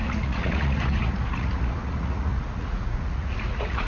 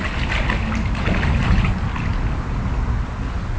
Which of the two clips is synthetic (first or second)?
first